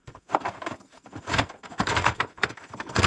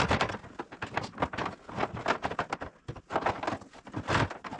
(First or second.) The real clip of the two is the second